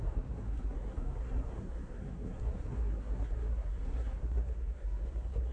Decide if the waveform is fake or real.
fake